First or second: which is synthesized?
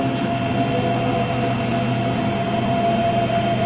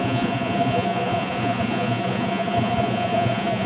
second